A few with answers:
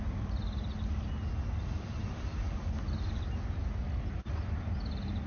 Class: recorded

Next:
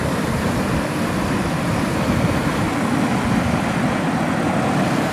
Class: recorded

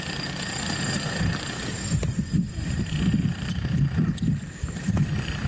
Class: remade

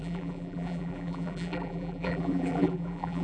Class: remade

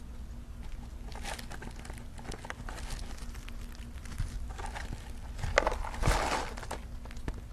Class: recorded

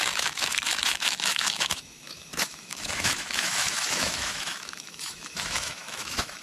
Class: remade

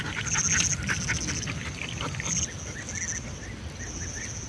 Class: recorded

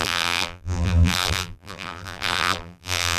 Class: remade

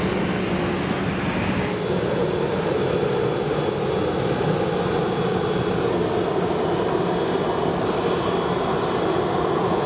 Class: recorded